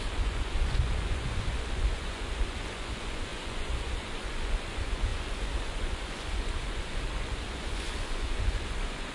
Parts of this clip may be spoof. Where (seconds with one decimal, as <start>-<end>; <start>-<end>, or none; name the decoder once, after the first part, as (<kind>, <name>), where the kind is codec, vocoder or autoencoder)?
0.0-9.1 (vocoder, Vocos)